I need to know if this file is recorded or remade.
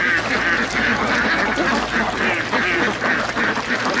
recorded